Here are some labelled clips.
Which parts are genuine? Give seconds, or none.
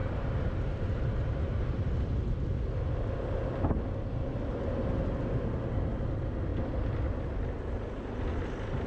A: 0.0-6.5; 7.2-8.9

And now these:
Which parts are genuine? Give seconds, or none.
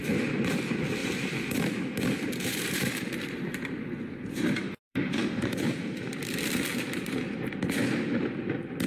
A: 0.0-1.0; 6.1-6.7; 7.2-8.9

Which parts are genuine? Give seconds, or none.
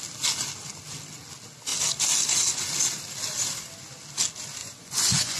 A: 0.0-4.6